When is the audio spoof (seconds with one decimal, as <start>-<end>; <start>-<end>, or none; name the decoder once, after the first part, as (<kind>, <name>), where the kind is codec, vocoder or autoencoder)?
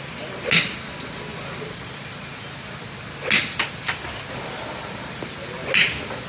none